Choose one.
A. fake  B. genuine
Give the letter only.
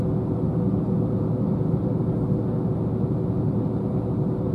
B